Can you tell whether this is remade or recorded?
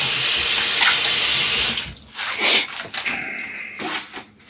recorded